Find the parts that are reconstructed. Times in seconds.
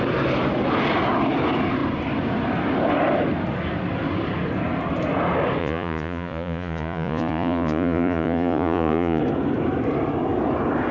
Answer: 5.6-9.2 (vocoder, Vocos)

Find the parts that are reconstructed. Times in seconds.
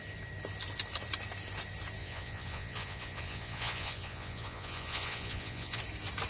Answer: 2.0-5.8 (vocoder, Vocos)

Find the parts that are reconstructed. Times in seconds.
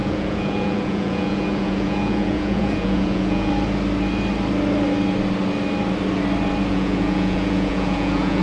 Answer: 0.0-3.5 (vocoder, Vocos); 6.7-8.4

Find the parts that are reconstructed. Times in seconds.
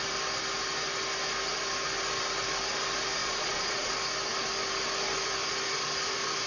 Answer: 3.2-3.9 (vocoder, Vocos)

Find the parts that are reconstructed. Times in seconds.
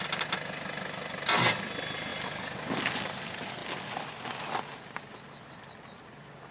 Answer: none